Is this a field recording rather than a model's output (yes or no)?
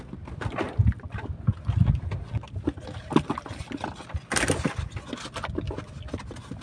yes